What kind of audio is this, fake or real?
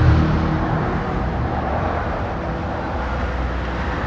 real